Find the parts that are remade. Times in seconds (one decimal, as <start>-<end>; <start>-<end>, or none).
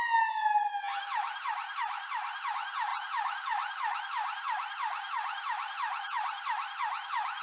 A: 0.9-2.5; 2.9-7.4